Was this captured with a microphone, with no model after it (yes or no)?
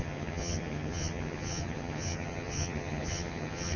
no